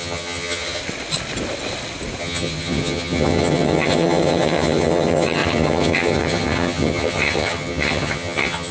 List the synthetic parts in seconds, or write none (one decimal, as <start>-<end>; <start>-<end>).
0.0-0.8; 2.2-8.7

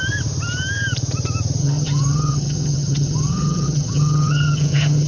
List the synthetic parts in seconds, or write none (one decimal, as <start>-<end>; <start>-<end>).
1.6-5.1

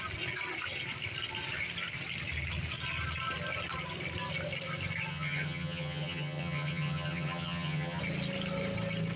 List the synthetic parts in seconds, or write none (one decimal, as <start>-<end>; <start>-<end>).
5.1-8.0

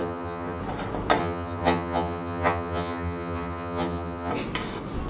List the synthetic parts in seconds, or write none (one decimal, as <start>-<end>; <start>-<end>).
0.0-0.6; 1.2-4.3

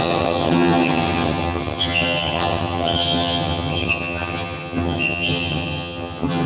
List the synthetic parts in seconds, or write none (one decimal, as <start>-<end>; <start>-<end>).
0.0-6.5

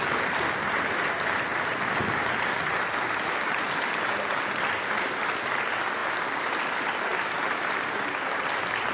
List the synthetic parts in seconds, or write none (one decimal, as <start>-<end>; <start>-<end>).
none